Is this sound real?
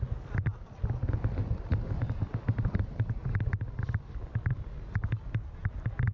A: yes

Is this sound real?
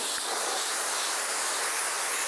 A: yes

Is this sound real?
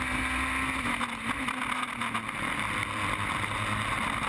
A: yes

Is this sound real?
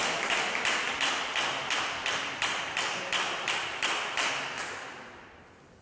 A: no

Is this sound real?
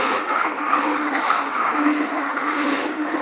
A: no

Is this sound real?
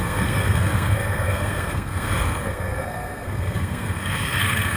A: no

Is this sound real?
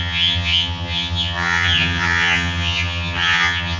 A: no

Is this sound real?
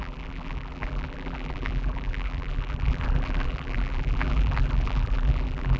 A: no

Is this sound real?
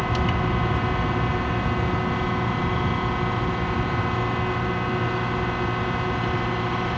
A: yes